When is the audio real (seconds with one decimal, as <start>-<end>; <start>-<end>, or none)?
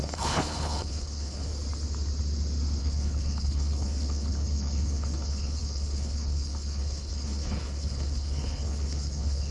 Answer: 1.5-2.8